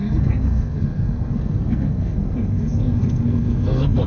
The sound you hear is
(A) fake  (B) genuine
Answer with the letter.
A